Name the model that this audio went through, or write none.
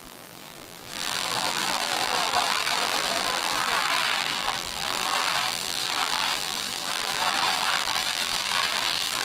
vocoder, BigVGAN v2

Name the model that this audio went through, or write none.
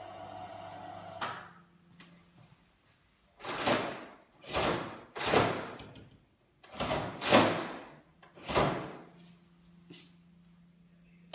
none